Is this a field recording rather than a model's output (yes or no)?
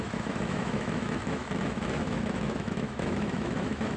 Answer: no